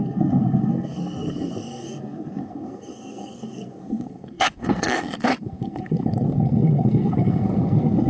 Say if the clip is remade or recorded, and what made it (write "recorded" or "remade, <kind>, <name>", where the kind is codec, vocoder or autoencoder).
remade, codec, SNAC